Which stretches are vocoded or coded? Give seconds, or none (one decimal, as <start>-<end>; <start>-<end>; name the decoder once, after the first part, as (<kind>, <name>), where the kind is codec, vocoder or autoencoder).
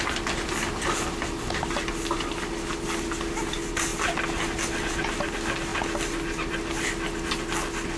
none